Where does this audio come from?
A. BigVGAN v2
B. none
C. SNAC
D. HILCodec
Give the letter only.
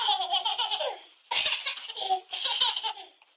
B